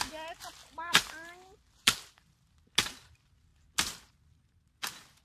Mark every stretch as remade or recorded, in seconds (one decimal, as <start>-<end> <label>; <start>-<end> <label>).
0.0-0.6 recorded; 0.6-2.5 remade; 2.5-5.2 recorded